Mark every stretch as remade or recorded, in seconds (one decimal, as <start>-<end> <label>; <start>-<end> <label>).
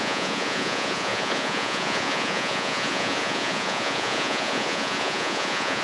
0.0-5.8 remade